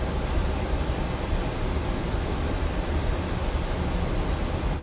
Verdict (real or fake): real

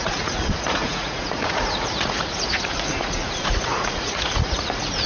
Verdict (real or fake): fake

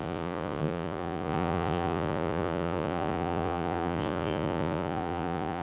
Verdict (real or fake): fake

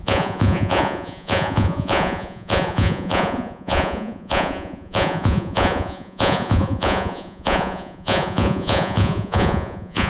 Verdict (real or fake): fake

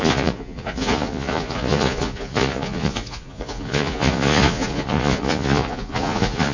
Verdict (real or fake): fake